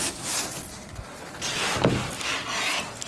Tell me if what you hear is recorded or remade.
recorded